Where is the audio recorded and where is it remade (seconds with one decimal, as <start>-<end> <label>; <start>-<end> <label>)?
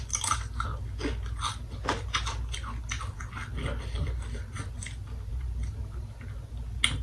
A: 0.0-5.3 recorded; 5.3-6.1 remade; 6.1-7.0 recorded